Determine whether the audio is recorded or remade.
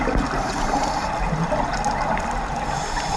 recorded